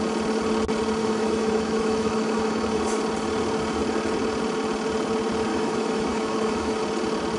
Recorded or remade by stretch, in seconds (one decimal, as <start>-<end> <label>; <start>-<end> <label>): 0.0-1.0 recorded; 1.0-2.8 remade; 2.8-5.5 recorded; 5.5-6.8 remade; 6.8-7.4 recorded